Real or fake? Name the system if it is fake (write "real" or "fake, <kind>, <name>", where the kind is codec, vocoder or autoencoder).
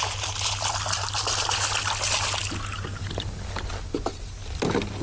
real